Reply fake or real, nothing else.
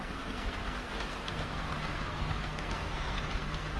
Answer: fake